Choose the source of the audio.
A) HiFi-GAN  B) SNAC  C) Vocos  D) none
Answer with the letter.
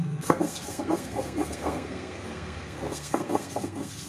B